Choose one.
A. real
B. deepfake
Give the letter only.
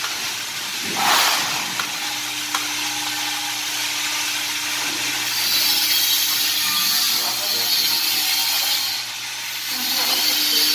A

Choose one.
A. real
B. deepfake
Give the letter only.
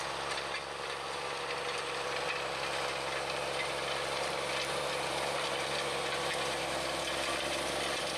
A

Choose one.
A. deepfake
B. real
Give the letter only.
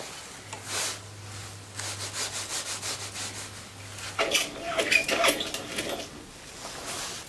B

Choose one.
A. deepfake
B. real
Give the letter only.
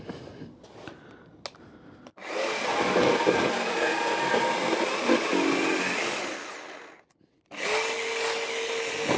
B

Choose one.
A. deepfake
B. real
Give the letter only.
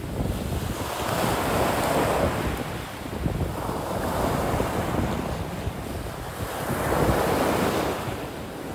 B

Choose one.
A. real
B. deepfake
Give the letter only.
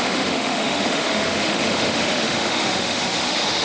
B